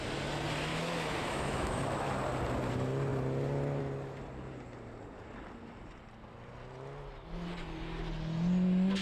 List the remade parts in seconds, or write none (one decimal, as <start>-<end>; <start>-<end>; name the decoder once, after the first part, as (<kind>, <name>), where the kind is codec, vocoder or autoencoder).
0.7-2.1 (autoencoder, DAC-VAE)